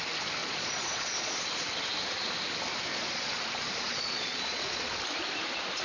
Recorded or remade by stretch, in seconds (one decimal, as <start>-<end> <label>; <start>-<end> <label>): 0.0-0.4 recorded; 0.4-1.4 remade; 1.4-2.9 recorded; 2.9-3.4 remade; 3.4-3.9 recorded; 3.9-5.0 remade; 5.0-5.8 recorded